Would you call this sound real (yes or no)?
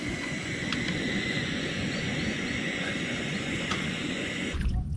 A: no